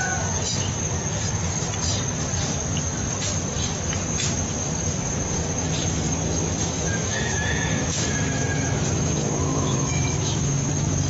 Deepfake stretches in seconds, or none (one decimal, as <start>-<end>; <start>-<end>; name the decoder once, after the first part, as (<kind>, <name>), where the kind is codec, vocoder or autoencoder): 6.6-10.7 (autoencoder, DAC-VAE)